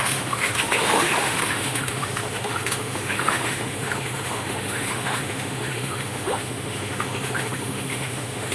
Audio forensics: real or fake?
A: fake